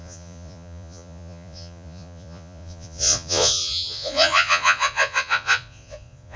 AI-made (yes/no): yes